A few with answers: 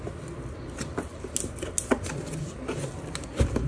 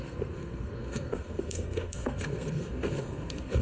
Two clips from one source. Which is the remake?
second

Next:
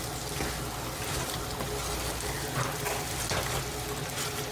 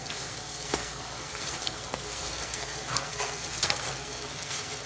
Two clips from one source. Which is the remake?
second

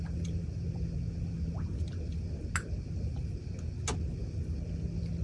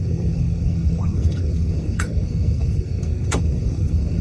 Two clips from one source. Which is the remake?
second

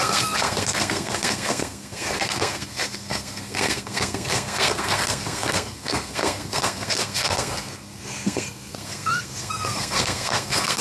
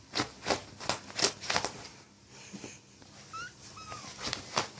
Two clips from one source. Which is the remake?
first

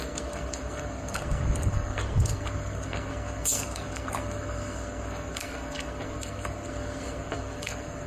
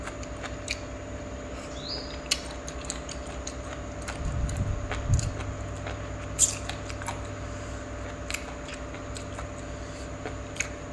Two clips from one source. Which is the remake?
first